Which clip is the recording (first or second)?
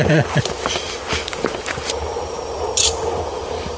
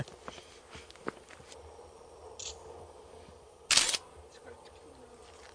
second